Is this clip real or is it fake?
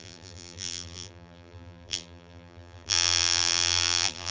fake